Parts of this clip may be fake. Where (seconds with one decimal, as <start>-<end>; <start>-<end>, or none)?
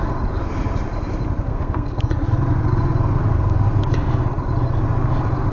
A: 1.5-2.0